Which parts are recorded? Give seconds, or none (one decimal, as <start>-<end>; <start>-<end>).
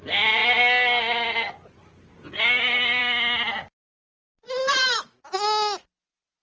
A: 0.0-6.4